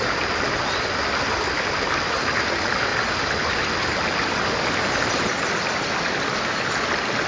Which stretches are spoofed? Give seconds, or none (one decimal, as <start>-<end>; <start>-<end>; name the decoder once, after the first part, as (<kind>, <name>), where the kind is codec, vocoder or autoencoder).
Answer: none